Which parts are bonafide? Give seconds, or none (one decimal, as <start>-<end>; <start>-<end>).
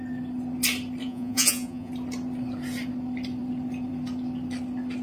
0.0-1.0; 1.9-5.0